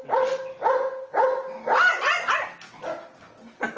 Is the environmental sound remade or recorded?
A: recorded